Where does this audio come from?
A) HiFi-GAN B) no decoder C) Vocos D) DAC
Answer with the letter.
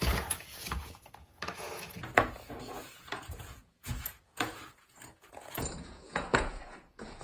C